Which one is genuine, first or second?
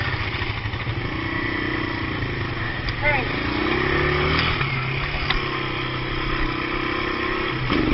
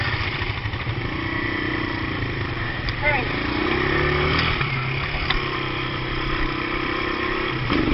first